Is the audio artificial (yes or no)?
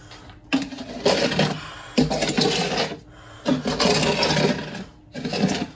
no